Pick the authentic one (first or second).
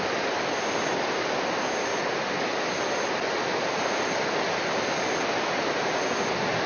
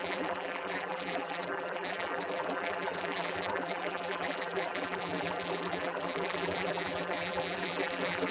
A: first